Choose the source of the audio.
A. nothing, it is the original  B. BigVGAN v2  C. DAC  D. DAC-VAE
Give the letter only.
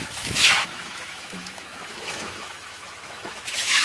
D